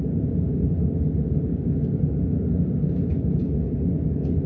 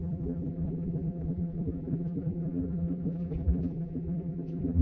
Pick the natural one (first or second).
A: first